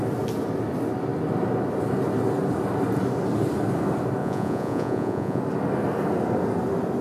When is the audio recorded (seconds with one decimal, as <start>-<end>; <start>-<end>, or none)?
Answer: 0.0-4.2; 5.4-7.0